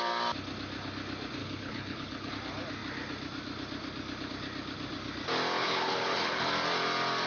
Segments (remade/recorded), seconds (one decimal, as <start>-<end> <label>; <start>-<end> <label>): 0.0-1.4 recorded; 1.4-2.3 remade; 2.3-5.6 recorded; 5.6-6.5 remade; 6.5-7.3 recorded